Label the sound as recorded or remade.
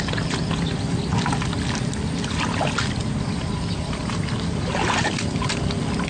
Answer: recorded